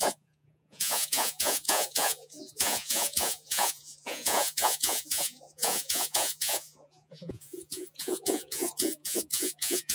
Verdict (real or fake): fake